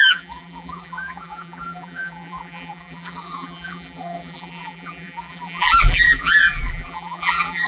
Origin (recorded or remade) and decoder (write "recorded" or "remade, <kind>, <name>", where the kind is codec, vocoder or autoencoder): remade, vocoder, BigVGAN v2